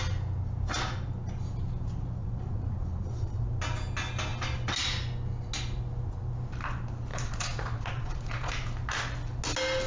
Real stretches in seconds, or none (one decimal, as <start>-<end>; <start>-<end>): 0.0-2.2; 3.5-7.1; 8.5-9.9